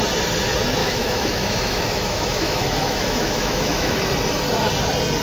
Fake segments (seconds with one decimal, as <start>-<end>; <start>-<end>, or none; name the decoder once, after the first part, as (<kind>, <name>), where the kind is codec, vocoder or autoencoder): 0.8-3.9 (autoencoder, DAC-VAE)